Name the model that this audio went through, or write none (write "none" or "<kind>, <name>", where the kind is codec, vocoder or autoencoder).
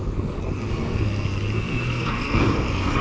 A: codec, SNAC